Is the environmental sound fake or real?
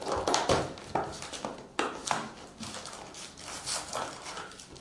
real